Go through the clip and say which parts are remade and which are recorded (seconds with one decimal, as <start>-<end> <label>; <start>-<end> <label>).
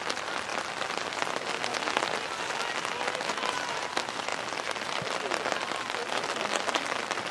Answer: 0.0-0.5 recorded; 0.5-1.5 remade; 1.5-6.0 recorded; 6.0-7.3 remade